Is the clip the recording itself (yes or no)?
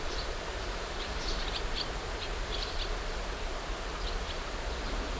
yes